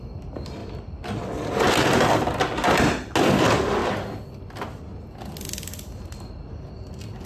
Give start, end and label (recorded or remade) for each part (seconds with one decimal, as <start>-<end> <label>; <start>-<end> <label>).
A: 0.0-7.3 recorded